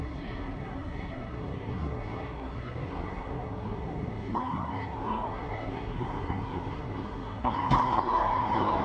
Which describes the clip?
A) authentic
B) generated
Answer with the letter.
B